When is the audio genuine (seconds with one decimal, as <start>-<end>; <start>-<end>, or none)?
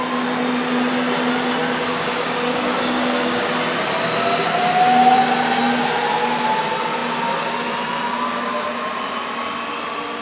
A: 0.0-1.6; 3.5-10.2